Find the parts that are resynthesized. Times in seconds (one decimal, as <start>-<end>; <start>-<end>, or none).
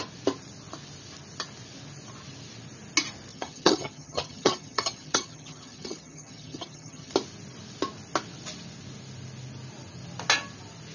3.3-7.1